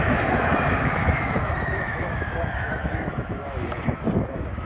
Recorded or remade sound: remade